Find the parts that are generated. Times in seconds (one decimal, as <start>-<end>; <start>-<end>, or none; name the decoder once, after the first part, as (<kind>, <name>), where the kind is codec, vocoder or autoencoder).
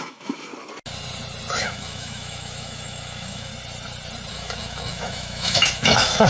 0.0-0.5 (autoencoder, DAC-VAE); 1.6-3.5; 4.3-6.3